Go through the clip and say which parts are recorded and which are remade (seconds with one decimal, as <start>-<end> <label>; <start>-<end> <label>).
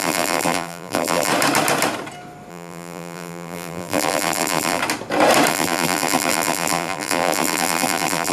0.0-1.3 remade; 1.3-2.5 recorded; 2.5-4.8 remade; 4.8-5.5 recorded; 5.5-8.3 remade